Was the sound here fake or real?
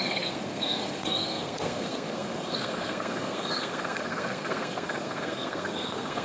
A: fake